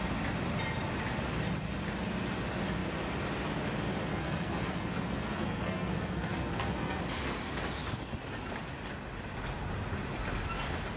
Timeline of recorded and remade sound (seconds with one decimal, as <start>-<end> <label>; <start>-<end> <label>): 0.0-4.1 recorded; 4.1-7.0 remade; 7.0-11.0 recorded